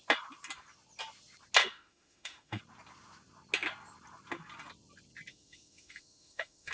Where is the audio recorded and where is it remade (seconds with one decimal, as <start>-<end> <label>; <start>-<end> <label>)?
0.0-1.6 recorded; 1.6-2.6 remade; 2.6-5.3 recorded; 5.3-6.7 remade